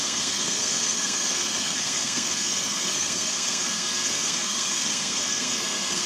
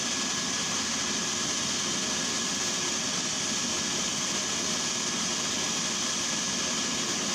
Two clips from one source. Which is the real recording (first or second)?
second